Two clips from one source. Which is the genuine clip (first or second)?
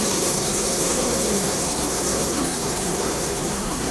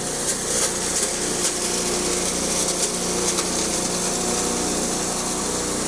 second